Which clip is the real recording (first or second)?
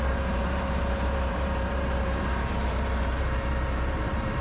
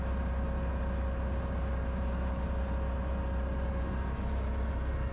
second